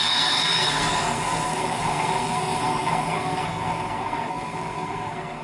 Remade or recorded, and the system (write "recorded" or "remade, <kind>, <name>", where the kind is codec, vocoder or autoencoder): remade, codec, SNAC